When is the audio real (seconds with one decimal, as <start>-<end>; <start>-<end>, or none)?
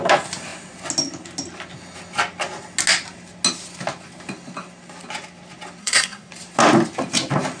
0.0-5.8; 6.3-7.6